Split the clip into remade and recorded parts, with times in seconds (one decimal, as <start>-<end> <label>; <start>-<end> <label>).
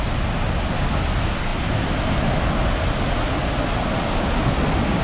0.0-5.0 recorded